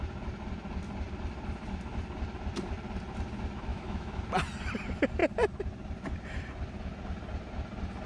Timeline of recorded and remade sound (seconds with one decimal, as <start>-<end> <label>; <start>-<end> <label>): 0.0-3.7 recorded; 3.7-4.2 remade; 4.2-8.1 recorded